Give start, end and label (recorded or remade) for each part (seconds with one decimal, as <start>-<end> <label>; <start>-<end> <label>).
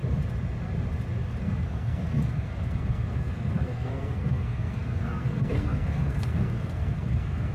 0.0-1.4 recorded; 1.4-7.5 remade